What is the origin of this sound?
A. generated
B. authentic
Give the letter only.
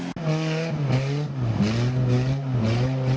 B